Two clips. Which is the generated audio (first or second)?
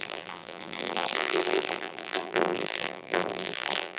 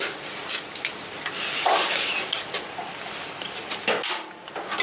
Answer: first